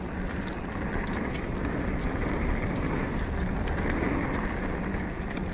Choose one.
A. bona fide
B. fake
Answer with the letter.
A